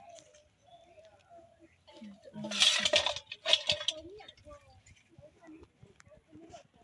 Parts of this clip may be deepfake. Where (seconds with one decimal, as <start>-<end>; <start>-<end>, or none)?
none

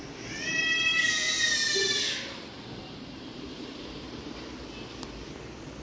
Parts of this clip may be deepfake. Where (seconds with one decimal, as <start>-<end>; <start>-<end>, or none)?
0.9-4.4

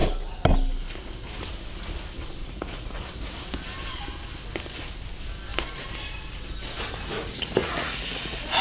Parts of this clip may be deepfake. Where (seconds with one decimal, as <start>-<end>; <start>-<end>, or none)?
2.4-3.0; 7.6-8.6

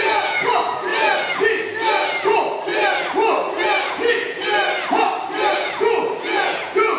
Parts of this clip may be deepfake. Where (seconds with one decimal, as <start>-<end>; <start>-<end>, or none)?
0.0-0.9; 3.9-4.4; 5.5-7.0

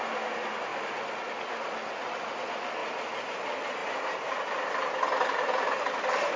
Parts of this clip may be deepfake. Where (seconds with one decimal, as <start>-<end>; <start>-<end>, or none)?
none

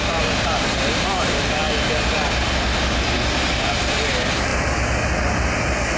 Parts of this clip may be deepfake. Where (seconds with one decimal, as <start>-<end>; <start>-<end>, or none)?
0.0-1.6; 3.5-4.5; 5.3-6.0

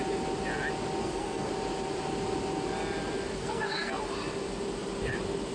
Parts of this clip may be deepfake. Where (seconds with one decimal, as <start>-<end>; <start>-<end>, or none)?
1.0-1.5; 3.4-4.0